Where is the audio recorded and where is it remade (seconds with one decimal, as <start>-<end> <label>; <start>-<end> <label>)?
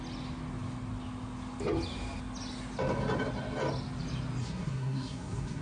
0.0-4.4 recorded; 4.4-5.6 remade